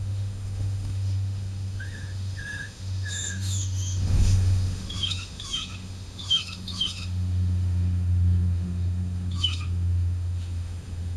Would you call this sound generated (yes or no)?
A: yes